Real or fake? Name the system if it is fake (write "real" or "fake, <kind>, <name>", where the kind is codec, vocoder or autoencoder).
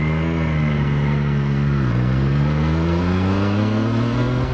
fake, codec, SNAC